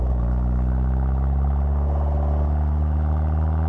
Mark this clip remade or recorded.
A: recorded